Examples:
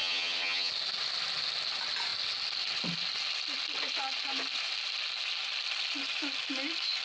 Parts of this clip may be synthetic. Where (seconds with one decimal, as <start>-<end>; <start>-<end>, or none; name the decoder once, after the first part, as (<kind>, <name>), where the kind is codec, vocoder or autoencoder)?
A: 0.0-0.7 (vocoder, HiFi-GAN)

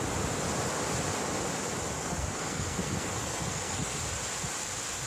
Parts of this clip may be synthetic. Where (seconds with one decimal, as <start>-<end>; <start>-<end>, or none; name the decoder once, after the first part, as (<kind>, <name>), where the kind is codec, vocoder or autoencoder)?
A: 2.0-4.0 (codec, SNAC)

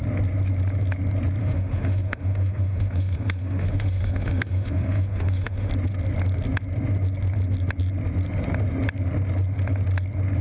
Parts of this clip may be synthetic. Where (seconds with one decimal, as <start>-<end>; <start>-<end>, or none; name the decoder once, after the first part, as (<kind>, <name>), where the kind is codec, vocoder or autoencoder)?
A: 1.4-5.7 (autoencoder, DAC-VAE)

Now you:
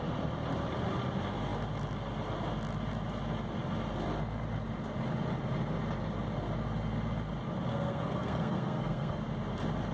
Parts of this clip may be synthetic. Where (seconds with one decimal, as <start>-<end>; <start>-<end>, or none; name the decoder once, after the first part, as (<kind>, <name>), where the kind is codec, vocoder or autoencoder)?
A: 7.7-9.2 (codec, SNAC)

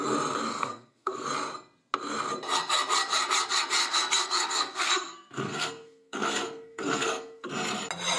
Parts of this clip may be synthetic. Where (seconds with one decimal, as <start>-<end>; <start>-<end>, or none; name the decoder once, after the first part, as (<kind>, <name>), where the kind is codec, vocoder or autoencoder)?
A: 0.5-1.3 (codec, SNAC); 3.8-7.5

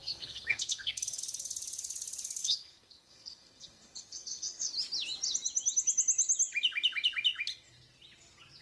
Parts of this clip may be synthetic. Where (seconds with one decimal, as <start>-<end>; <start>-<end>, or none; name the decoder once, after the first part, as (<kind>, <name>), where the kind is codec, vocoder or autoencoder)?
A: 0.0-1.2 (codec, SNAC); 2.4-4.7

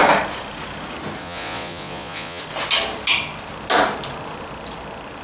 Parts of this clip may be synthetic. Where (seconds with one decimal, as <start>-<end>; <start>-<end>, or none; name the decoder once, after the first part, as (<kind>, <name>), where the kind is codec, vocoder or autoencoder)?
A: 1.2-2.4 (vocoder, Vocos)